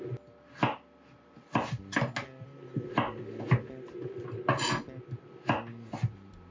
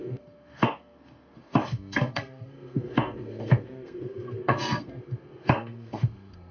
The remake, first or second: second